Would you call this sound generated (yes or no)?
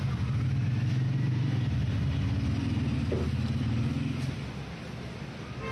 no